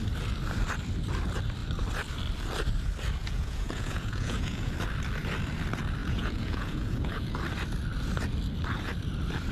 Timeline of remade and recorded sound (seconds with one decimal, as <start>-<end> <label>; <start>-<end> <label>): 0.0-3.2 recorded; 3.2-4.7 remade; 4.7-6.0 recorded; 6.0-7.4 remade; 7.4-9.5 recorded